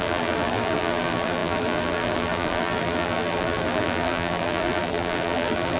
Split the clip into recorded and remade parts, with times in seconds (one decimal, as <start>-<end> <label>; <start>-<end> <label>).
0.0-5.8 remade